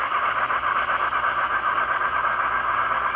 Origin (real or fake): real